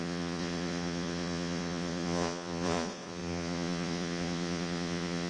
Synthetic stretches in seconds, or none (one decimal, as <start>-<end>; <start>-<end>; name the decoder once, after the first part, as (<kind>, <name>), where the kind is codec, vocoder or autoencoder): 0.0-5.3 (vocoder, Vocos)